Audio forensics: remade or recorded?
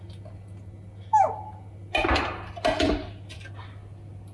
recorded